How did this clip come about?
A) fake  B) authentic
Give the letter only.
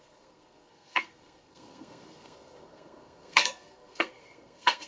A